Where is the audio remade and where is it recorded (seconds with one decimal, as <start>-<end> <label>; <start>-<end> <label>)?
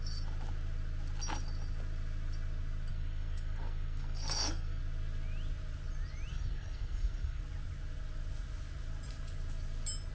0.0-2.9 recorded; 2.9-4.8 remade; 4.8-6.3 recorded; 6.3-7.4 remade; 7.4-10.1 recorded